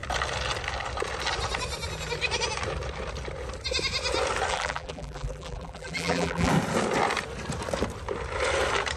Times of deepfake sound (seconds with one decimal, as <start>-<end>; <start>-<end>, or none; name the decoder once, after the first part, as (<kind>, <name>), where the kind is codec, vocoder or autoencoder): 4.5-6.5 (vocoder, BigVGAN v2)